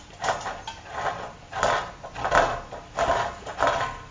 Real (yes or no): yes